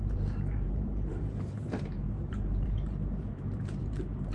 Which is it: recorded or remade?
remade